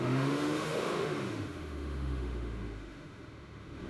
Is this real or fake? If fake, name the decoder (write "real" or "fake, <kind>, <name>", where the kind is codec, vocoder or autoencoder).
fake, autoencoder, DAC-VAE